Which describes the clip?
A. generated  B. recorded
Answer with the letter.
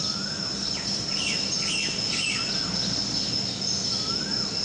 B